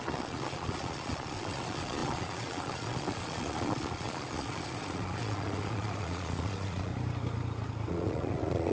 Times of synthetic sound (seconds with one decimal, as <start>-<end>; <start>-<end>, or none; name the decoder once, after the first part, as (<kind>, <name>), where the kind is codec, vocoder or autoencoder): 0.0-6.9 (vocoder, Vocos); 7.9-8.7